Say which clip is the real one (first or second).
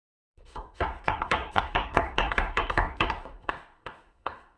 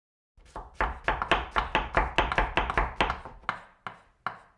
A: second